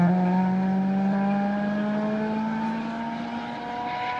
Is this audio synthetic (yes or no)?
no